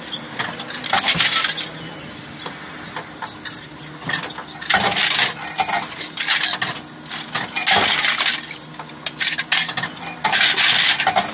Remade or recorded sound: recorded